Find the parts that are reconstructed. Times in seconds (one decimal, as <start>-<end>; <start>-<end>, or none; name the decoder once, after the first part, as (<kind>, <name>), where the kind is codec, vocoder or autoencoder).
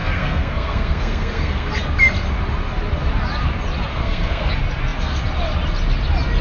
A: 0.0-1.7 (codec, SNAC); 3.9-4.5